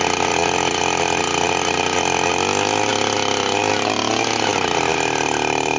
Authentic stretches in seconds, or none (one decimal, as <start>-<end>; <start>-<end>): 0.0-5.8